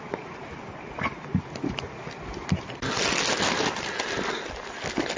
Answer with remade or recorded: recorded